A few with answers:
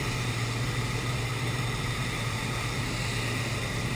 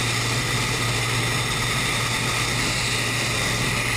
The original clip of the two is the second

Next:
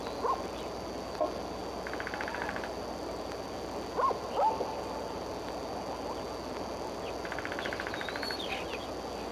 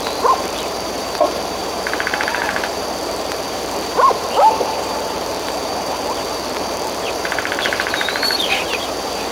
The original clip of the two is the first